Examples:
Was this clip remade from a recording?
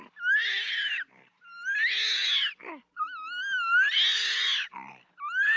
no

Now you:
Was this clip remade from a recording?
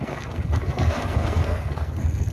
yes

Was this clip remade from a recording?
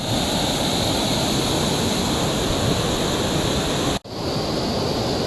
no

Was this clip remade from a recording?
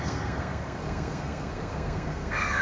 yes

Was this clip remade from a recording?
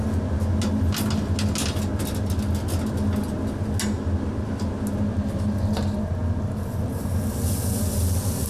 no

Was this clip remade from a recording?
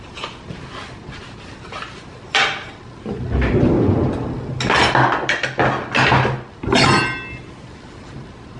no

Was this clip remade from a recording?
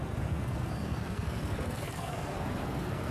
yes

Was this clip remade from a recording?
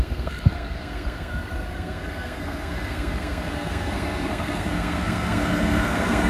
yes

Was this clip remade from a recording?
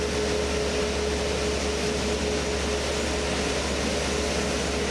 no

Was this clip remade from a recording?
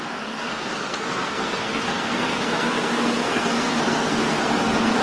yes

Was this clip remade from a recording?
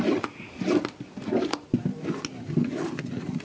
no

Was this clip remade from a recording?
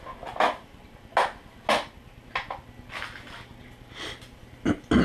no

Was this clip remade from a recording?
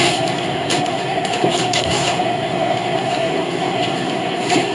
yes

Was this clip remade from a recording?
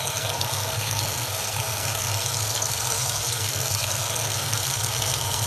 yes